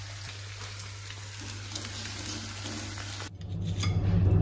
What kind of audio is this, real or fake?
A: real